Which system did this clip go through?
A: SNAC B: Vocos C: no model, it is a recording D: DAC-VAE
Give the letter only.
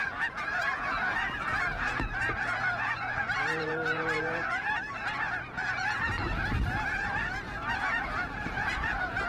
B